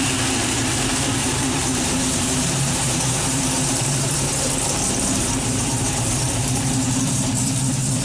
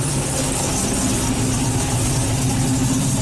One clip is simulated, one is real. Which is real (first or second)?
second